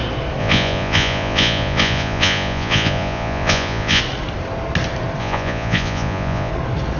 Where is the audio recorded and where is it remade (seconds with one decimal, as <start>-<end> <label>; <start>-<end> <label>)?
0.0-0.4 recorded; 0.4-4.0 remade; 4.0-5.2 recorded; 5.2-6.5 remade; 6.5-7.0 recorded